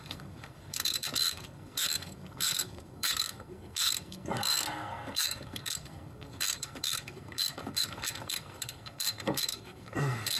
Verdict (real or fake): fake